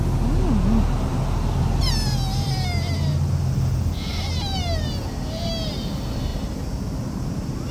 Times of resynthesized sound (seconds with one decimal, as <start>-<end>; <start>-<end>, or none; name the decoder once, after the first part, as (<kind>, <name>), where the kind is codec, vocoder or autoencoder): none